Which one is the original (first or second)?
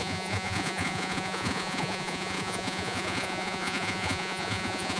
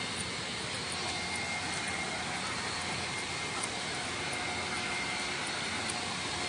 second